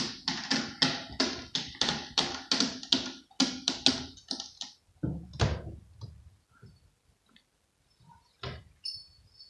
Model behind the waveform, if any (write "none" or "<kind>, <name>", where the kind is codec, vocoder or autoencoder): none